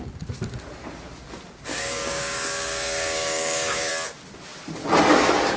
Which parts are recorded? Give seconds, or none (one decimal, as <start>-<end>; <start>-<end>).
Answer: 0.0-1.7; 3.9-5.6